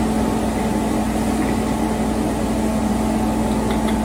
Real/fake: real